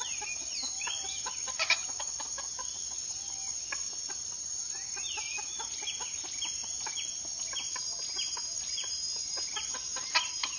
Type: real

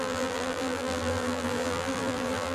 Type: fake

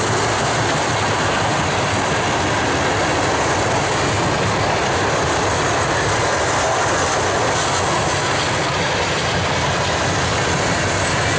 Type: real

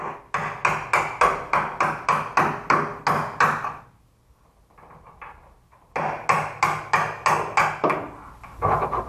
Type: real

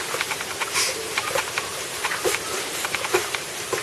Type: fake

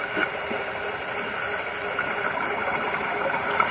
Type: fake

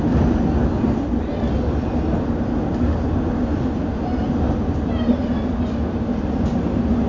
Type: real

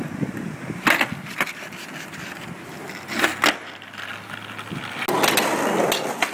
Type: real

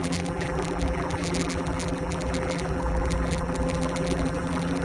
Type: fake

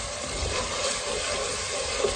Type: fake